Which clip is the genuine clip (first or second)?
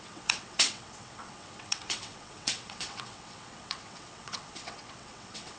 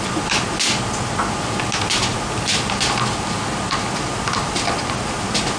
second